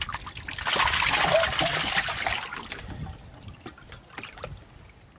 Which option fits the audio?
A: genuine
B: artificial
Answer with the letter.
A